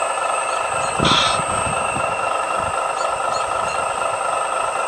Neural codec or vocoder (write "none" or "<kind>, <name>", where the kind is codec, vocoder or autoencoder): none